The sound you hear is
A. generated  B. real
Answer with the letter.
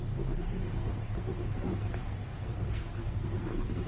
A